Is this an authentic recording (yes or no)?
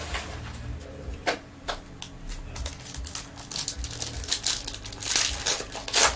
yes